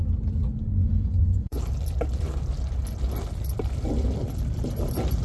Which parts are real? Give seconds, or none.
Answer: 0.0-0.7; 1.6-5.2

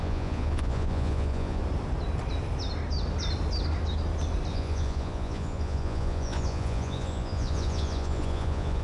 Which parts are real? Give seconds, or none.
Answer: 1.6-4.5

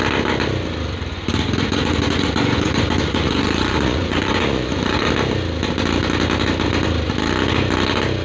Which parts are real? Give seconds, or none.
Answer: 0.0-1.1; 5.1-8.2

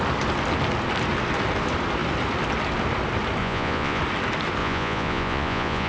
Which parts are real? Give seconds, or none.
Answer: 0.0-3.4; 4.0-4.6